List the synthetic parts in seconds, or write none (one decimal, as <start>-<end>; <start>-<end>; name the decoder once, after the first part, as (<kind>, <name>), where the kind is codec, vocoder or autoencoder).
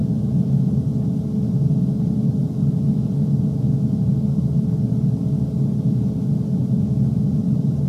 0.0-1.0 (vocoder, Vocos); 2.4-4.0; 6.6-7.4